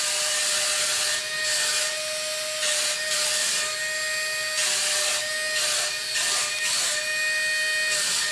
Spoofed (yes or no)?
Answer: no